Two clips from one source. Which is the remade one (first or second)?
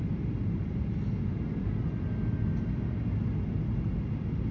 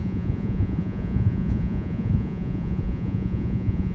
second